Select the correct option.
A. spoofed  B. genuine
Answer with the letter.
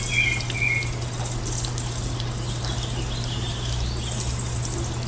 B